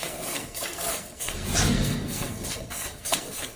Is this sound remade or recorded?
remade